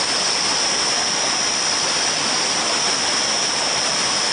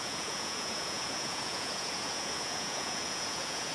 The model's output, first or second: second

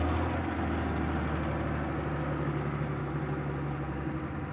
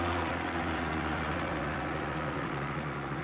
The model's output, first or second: second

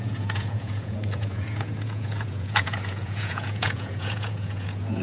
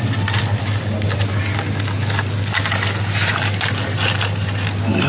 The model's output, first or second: first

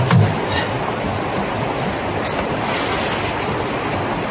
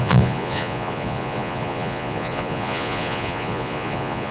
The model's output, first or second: second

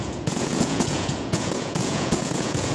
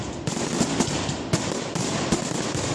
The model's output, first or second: first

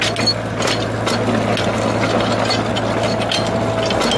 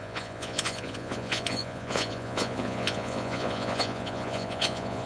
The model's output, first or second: second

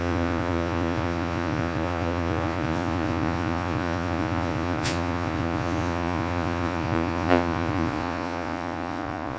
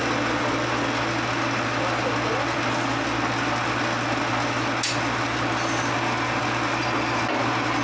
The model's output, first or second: first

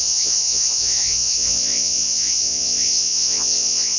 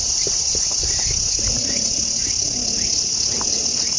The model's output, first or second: first